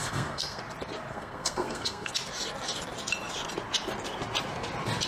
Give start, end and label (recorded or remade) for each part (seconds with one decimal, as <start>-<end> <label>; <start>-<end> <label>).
0.0-0.6 remade; 0.6-1.1 recorded; 1.1-2.1 remade; 2.1-5.1 recorded